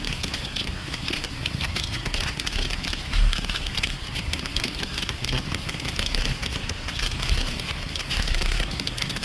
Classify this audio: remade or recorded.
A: remade